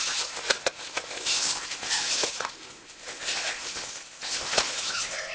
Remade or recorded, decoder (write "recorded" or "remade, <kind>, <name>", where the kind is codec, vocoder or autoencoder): remade, codec, ZipCodec